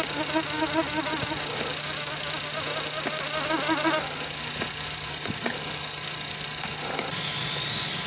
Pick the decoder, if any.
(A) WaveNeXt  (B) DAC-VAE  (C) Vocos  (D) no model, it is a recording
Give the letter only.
D